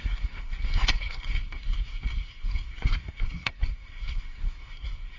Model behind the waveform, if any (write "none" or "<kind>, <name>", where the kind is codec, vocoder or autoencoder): codec, SNAC